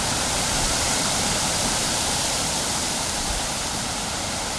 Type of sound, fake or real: fake